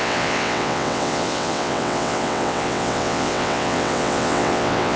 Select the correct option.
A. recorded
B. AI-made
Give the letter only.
B